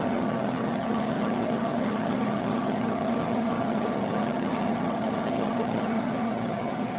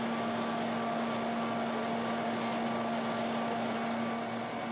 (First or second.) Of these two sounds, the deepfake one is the first